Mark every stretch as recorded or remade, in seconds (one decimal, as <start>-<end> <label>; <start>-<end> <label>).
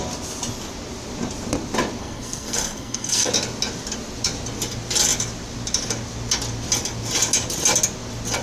0.0-2.0 recorded; 2.0-3.3 remade; 3.3-8.4 recorded